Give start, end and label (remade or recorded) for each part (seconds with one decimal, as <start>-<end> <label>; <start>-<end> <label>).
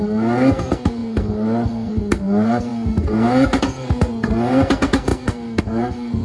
0.0-6.2 remade